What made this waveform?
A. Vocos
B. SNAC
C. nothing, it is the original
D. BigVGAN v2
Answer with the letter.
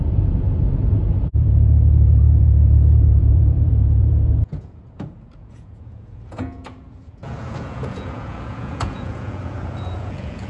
A